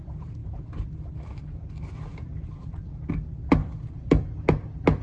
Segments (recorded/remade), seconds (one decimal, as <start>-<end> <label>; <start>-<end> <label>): 0.0-0.4 recorded; 0.4-1.1 remade; 1.1-2.1 recorded; 2.1-3.1 remade; 3.1-3.6 recorded; 3.6-5.0 remade